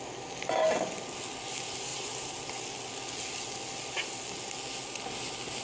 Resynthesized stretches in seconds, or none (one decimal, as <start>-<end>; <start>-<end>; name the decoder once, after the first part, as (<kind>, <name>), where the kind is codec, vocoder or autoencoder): 1.9-2.5 (vocoder, BigVGAN v2)